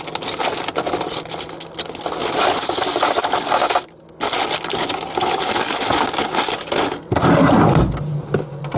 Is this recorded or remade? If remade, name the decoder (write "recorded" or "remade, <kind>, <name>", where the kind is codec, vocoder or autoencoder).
recorded